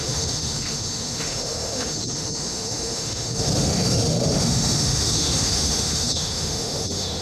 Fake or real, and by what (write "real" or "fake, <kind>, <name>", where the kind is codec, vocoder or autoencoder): fake, autoencoder, DAC-VAE